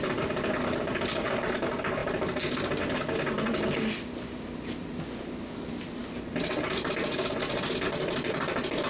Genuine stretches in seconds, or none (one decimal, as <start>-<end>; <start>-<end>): 0.0-8.9